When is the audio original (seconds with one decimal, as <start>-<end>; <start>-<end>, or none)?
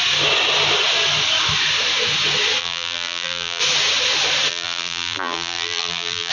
0.0-2.6; 3.6-4.5